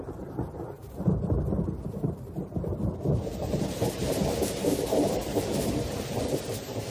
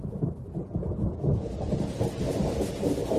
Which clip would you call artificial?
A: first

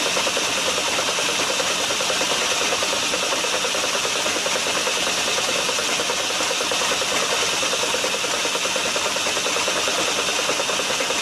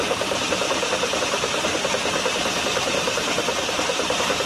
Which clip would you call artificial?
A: second